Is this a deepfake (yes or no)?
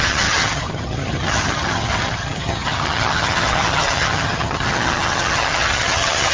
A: yes